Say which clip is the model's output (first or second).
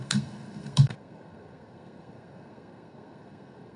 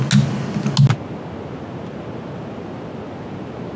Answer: first